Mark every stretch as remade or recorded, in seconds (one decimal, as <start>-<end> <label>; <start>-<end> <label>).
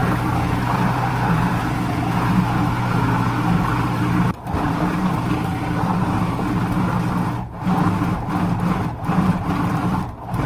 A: 0.0-1.6 remade; 1.6-4.0 recorded; 4.0-5.9 remade; 5.9-9.7 recorded; 9.7-10.5 remade